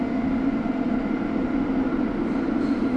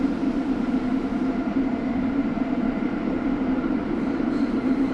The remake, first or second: second